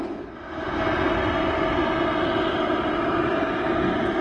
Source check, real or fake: real